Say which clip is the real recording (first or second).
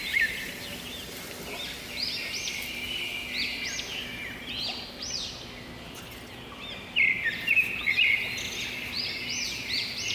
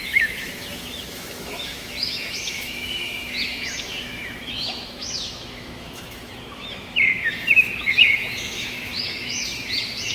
first